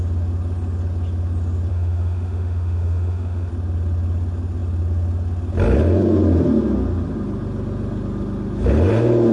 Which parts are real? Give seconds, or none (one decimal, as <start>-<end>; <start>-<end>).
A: 0.0-1.7; 3.5-9.3